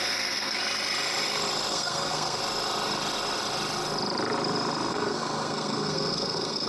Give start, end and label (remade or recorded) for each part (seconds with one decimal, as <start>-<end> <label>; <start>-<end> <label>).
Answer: 0.0-0.6 remade; 0.6-1.7 recorded; 1.7-2.4 remade; 2.4-4.9 recorded; 4.9-6.7 remade